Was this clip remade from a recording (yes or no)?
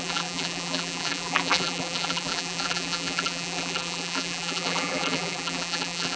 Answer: yes